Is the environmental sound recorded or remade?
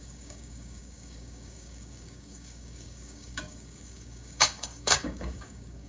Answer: remade